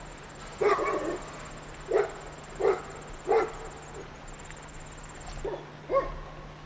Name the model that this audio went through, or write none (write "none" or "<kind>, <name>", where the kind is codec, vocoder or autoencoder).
none